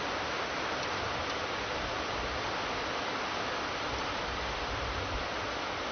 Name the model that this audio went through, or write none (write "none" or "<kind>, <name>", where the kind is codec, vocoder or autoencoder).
none